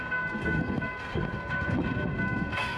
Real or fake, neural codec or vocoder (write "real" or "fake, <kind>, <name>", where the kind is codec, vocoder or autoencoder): fake, codec, SNAC